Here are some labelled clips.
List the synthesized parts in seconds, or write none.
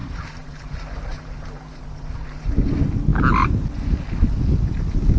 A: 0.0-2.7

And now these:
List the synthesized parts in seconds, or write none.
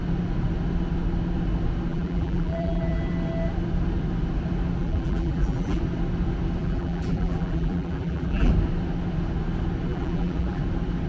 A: 1.9-3.0; 4.8-5.8; 6.6-8.5; 9.9-10.6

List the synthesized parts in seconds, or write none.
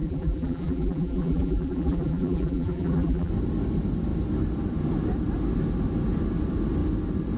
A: 0.0-3.3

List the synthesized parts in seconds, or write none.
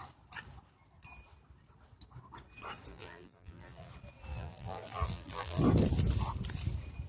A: 2.9-3.9; 4.3-5.6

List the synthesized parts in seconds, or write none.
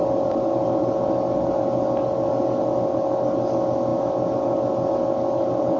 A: none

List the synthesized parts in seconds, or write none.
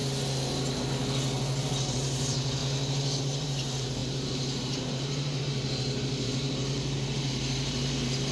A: 1.6-2.6; 3.2-8.3